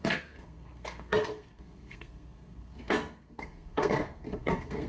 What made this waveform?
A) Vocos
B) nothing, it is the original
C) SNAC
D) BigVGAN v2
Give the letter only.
C